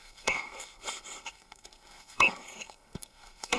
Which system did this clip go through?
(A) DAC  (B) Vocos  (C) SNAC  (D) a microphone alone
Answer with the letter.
C